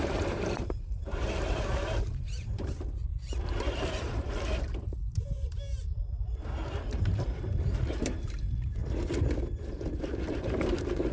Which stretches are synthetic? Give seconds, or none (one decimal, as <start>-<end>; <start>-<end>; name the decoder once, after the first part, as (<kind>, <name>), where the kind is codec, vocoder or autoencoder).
0.0-3.1 (vocoder, BigVGAN v2); 4.0-8.8; 10.2-11.1